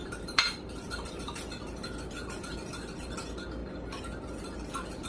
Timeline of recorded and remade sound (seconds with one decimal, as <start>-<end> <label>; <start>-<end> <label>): 0.0-1.2 remade; 1.2-5.1 recorded